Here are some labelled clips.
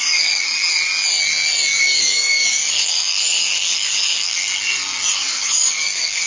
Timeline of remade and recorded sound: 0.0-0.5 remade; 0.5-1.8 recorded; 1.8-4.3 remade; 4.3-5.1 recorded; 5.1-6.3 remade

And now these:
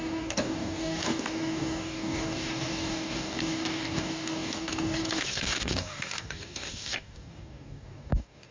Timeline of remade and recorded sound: 0.0-8.5 remade

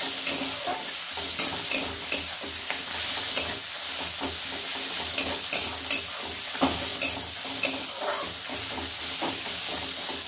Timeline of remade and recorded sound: 0.0-10.3 recorded

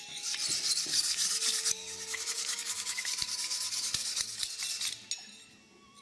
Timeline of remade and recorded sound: 0.0-0.9 recorded; 0.9-4.5 remade; 4.5-6.0 recorded

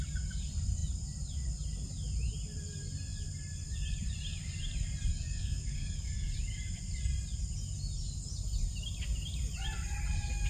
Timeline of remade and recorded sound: 0.0-5.1 recorded; 5.1-6.3 remade; 6.3-10.5 recorded

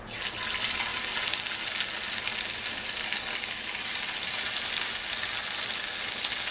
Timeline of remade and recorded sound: 0.0-2.7 recorded; 2.7-3.7 remade; 3.7-6.5 recorded

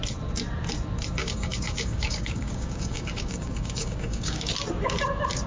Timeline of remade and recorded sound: 0.0-1.2 recorded; 1.2-4.5 remade; 4.5-5.5 recorded